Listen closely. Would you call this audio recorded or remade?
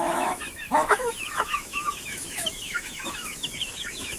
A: remade